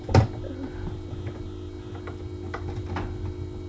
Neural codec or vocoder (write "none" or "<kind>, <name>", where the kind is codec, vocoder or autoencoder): none